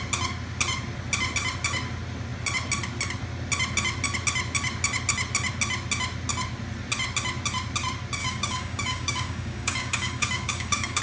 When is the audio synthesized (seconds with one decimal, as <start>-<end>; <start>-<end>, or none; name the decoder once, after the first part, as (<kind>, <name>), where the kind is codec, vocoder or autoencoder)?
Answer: 8.2-11.0 (codec, DAC)